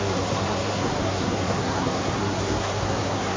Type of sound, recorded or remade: remade